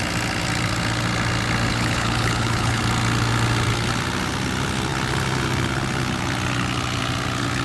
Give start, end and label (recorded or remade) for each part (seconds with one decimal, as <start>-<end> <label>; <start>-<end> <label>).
0.0-1.7 recorded; 1.7-2.8 remade; 2.8-7.6 recorded